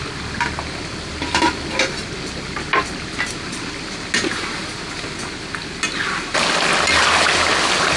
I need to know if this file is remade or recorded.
recorded